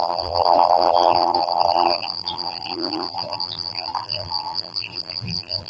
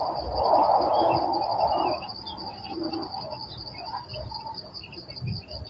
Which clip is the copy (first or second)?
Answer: first